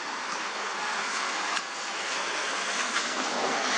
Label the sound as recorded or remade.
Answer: remade